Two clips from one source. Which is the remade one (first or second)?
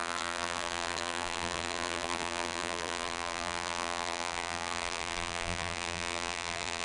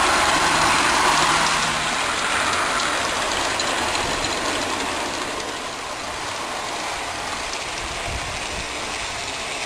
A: first